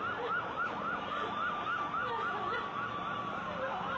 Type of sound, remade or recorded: recorded